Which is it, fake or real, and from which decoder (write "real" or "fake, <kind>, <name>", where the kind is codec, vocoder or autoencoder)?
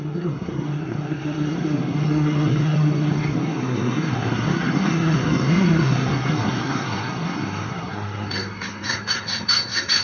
fake, codec, SNAC